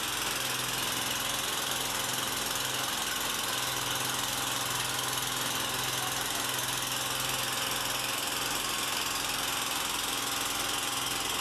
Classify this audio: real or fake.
real